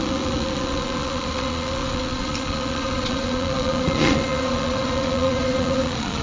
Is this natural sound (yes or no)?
no